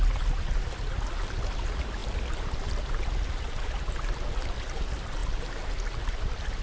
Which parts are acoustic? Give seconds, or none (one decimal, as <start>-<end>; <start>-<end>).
0.0-6.6